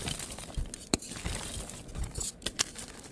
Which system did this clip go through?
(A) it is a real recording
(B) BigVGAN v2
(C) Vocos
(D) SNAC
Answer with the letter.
A